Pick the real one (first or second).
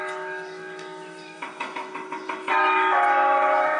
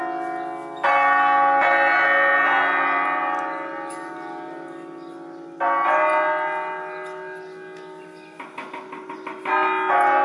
second